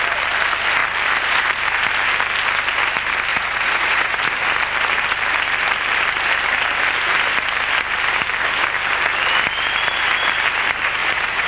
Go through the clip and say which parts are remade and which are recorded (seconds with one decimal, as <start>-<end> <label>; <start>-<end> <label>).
0.0-3.3 recorded; 3.3-4.2 remade; 4.2-11.0 recorded; 11.0-11.5 remade